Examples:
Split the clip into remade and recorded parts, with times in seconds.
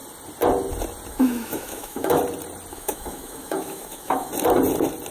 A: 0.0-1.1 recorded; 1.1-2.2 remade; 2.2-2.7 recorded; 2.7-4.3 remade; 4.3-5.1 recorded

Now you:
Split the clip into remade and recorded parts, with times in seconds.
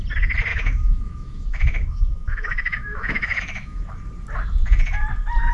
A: 0.0-0.5 recorded; 0.5-3.8 remade; 3.8-5.5 recorded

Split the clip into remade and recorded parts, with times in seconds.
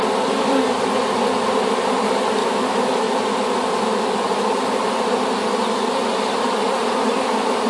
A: 0.0-2.4 recorded; 2.4-3.1 remade; 3.1-7.7 recorded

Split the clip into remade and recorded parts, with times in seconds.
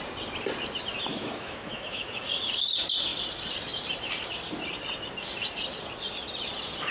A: 0.0-1.1 recorded; 1.1-2.2 remade; 2.2-6.9 recorded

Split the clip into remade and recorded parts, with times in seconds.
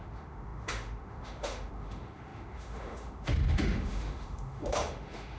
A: 0.0-5.4 remade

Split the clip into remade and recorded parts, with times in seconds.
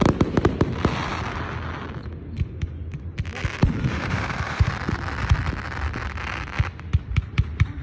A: 0.0-3.9 recorded; 3.9-4.7 remade; 4.7-7.8 recorded